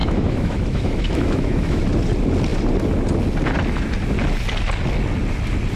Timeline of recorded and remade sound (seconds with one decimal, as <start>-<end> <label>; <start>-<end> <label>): 0.0-1.8 remade; 1.8-5.8 recorded